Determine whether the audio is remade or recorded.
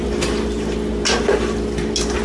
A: recorded